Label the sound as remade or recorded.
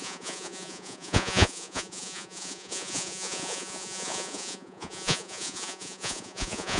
remade